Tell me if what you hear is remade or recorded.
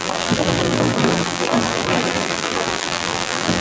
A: remade